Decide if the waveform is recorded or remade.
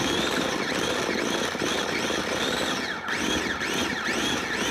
recorded